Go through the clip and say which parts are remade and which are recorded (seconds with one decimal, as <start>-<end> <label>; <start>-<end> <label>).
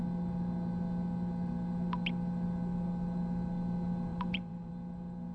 0.0-4.1 recorded; 4.1-4.7 remade; 4.7-5.3 recorded